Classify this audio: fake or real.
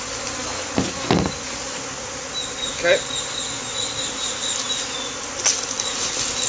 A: real